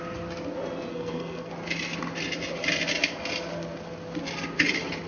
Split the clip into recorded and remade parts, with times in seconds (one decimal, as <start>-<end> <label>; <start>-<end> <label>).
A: 0.0-0.9 recorded; 0.9-1.5 remade; 1.5-5.1 recorded

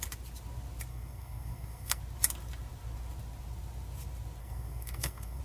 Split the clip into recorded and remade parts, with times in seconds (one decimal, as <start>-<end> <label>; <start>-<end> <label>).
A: 0.0-0.9 recorded; 0.9-2.0 remade; 2.0-4.4 recorded; 4.4-5.4 remade

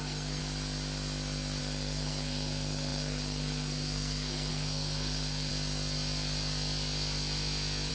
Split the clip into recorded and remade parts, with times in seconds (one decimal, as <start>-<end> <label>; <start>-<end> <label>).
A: 0.0-0.4 remade; 0.4-1.6 recorded; 1.6-5.5 remade; 5.5-7.9 recorded

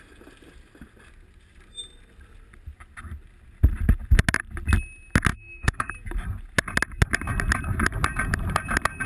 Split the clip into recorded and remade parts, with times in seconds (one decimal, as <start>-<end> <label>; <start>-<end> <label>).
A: 0.0-5.3 recorded; 5.3-5.9 remade; 5.9-9.1 recorded

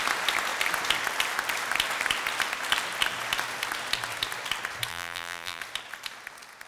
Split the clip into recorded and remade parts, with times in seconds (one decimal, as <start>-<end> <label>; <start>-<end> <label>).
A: 0.0-4.9 recorded; 4.9-5.6 remade; 5.6-6.7 recorded

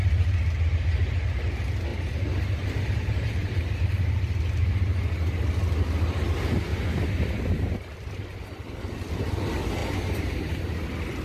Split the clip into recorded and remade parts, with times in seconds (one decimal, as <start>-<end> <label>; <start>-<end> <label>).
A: 0.0-1.9 recorded; 1.9-3.9 remade; 3.9-9.8 recorded; 9.8-10.6 remade; 10.6-11.2 recorded

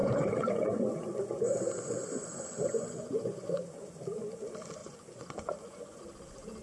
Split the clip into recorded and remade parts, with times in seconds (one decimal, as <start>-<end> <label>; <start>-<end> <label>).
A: 0.0-4.0 remade; 4.0-4.8 recorded; 4.8-6.0 remade; 6.0-6.6 recorded

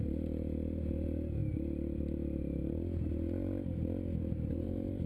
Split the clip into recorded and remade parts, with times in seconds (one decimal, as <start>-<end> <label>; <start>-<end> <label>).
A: 0.0-1.4 remade; 1.4-4.5 recorded; 4.5-5.1 remade